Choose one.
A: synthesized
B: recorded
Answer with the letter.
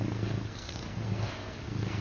A